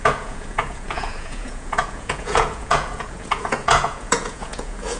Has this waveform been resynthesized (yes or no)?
yes